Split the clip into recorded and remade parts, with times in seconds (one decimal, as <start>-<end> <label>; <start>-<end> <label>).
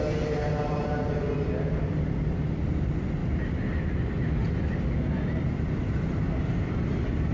0.0-7.3 recorded